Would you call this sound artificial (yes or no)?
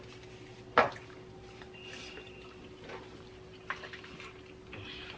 no